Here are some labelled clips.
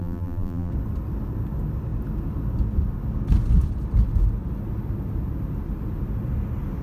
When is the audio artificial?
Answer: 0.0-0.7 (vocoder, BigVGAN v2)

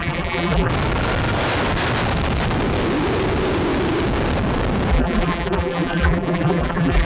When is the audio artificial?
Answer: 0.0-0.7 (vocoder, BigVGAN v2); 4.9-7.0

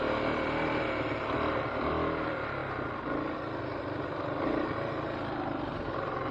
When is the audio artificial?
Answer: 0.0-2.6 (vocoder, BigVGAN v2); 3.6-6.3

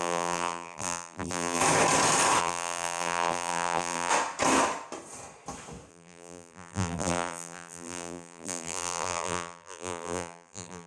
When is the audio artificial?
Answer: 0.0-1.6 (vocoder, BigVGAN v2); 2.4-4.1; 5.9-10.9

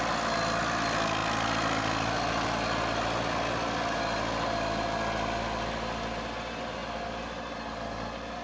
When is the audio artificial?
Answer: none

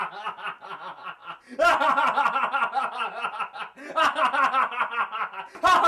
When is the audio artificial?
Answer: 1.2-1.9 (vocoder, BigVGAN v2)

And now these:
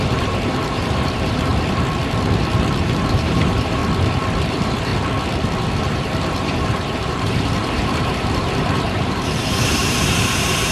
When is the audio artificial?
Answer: 0.0-1.5 (vocoder, BigVGAN v2); 2.8-3.8; 4.4-4.9; 5.8-10.7